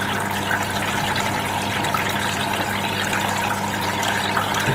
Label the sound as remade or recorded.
recorded